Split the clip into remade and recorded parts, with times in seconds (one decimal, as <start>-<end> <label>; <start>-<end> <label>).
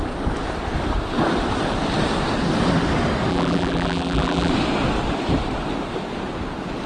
0.0-3.3 recorded; 3.3-4.5 remade; 4.5-6.9 recorded